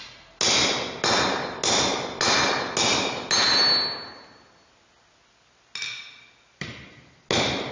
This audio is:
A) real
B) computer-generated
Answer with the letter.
A